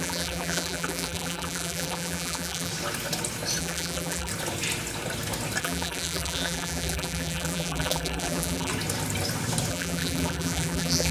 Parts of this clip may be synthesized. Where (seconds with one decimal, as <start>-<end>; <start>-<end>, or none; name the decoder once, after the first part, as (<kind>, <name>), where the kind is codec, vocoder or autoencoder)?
0.0-2.7 (vocoder, BigVGAN v2); 3.6-4.3; 5.6-8.7; 9.7-11.1